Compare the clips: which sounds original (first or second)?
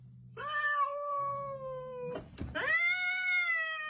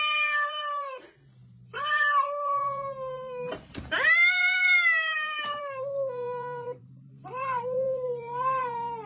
first